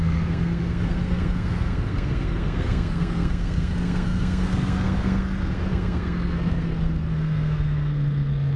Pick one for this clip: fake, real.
fake